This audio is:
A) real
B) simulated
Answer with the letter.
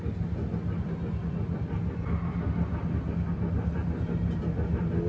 A